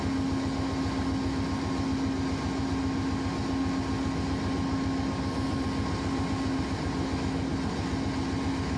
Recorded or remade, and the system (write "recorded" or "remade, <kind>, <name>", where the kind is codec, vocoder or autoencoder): recorded